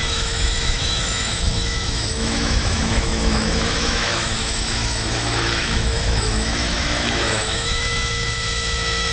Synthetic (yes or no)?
yes